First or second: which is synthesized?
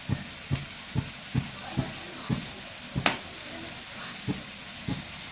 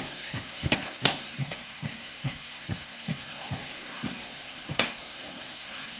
second